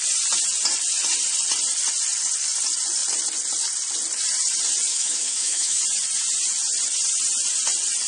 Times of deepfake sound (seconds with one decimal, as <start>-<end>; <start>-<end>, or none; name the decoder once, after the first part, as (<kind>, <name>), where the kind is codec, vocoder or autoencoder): 4.9-5.8 (autoencoder, DAC-VAE)